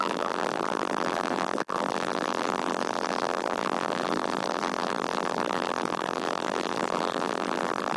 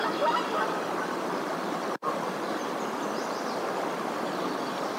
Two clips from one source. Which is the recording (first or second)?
second